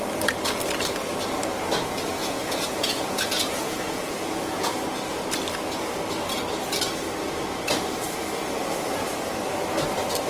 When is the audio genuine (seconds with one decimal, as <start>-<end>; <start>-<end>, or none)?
0.0-2.2; 4.7-10.3